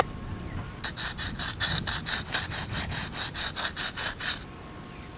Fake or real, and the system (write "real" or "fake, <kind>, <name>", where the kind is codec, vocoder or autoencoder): real